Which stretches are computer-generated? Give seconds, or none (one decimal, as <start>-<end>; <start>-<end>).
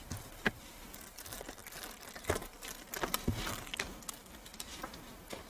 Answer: none